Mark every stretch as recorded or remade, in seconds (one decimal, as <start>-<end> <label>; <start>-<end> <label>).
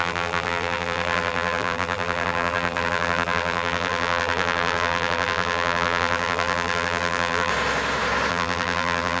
0.0-7.5 remade; 7.5-8.3 recorded; 8.3-9.2 remade